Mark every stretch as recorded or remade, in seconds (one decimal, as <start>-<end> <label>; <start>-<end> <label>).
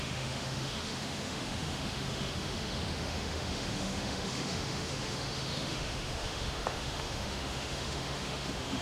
0.0-8.8 remade